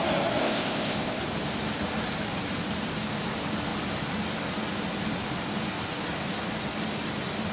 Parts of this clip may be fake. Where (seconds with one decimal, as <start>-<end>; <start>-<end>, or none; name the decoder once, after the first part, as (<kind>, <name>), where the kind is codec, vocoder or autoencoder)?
0.4-1.2 (codec, ZipCodec)